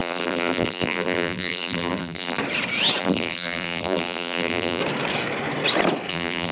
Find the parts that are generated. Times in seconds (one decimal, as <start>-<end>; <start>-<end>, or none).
0.0-2.4; 3.0-4.8; 6.1-6.5